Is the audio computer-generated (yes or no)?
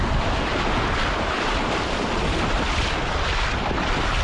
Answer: no